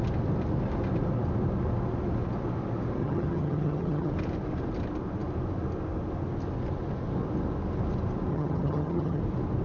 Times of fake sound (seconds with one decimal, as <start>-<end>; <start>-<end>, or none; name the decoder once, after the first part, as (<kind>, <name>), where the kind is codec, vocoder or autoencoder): 3.0-4.1 (vocoder, HiFi-GAN); 8.3-9.2